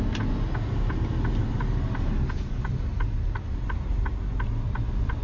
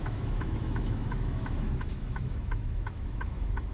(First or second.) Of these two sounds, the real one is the first